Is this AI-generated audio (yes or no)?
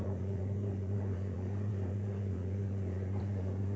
yes